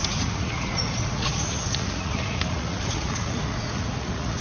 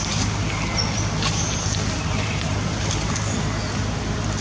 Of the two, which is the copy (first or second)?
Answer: first